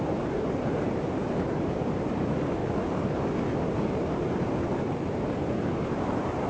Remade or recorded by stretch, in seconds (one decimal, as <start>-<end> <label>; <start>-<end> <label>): 0.0-2.6 remade; 2.6-5.9 recorded; 5.9-6.5 remade